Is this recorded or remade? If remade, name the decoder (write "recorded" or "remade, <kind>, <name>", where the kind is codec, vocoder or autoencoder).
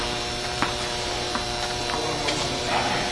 remade, vocoder, BigVGAN v2